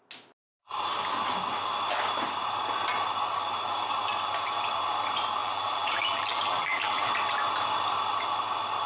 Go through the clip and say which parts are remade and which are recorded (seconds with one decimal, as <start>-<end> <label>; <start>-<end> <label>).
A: 0.0-5.4 recorded; 5.4-7.1 remade; 7.1-8.9 recorded